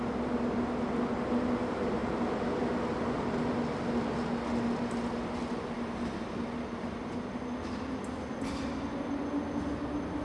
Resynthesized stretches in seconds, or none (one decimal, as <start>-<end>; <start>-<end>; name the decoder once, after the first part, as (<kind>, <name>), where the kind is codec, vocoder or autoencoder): none